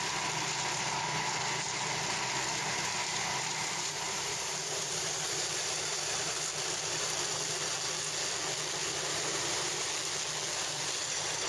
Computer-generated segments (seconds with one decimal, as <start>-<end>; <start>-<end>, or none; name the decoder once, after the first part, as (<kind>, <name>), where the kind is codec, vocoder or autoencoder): 3.0-6.3 (vocoder, BigVGAN v2); 8.8-9.9

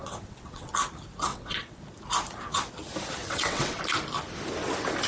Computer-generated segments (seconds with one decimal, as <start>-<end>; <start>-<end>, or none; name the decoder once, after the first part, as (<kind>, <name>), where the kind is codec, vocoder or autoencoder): 0.0-0.7 (vocoder, WaveNeXt); 1.3-1.8; 3.2-3.8